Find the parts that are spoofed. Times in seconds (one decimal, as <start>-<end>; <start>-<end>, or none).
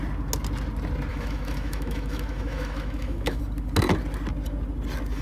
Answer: 1.1-3.4